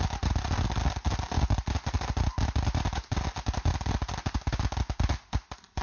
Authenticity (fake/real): real